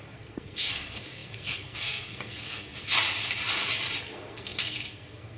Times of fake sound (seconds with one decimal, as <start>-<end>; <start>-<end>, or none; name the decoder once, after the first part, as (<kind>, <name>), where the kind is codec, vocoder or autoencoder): 0.0-2.7 (codec, SNAC); 4.0-5.4